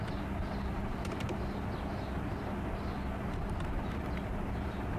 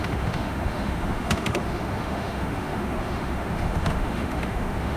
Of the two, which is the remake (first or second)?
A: second